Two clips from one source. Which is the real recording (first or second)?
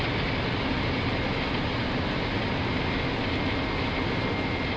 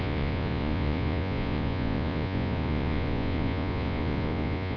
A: first